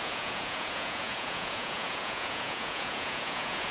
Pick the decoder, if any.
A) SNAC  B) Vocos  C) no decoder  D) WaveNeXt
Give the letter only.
B